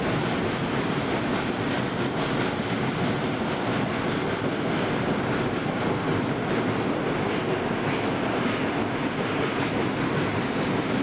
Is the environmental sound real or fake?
real